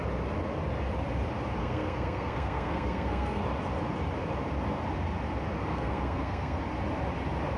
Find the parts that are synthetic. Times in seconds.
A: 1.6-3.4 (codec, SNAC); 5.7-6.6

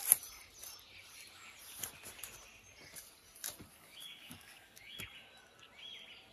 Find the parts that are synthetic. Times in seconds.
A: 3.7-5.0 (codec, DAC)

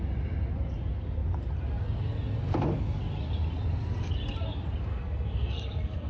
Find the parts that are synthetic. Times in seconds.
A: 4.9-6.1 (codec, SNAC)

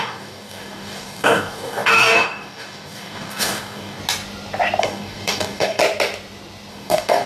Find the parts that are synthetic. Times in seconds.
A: 0.0-4.0 (codec, DAC); 4.8-5.8; 6.7-7.3

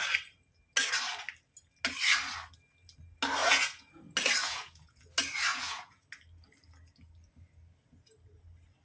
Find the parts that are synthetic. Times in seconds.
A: 3.4-4.0 (vocoder, Vocos); 4.4-5.0; 5.5-6.1

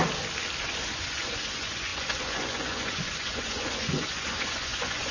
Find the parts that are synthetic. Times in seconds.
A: 0.6-5.1 (vocoder, Vocos)

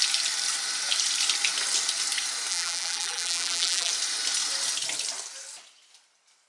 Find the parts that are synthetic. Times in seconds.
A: 2.5-3.9 (vocoder, BigVGAN v2)

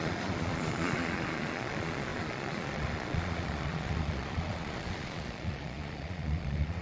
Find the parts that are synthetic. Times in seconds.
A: 0.0-6.8 (vocoder, Vocos)